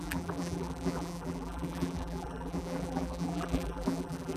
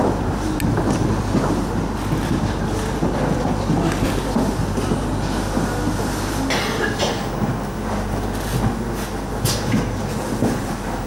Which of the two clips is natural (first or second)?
second